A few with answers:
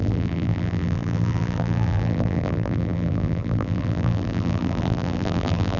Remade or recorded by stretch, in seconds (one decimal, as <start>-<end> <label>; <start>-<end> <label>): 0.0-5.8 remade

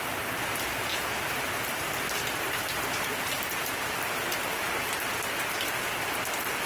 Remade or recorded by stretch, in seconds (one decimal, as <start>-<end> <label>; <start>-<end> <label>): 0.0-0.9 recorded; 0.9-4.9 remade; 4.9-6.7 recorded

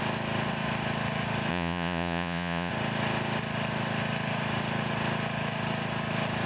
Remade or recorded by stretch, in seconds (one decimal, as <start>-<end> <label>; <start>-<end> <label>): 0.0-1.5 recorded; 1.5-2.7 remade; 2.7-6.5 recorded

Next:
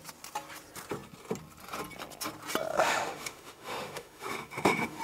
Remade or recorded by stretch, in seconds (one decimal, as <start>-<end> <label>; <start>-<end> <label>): 0.0-2.7 recorded; 2.7-5.0 remade